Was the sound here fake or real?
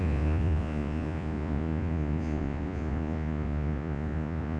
fake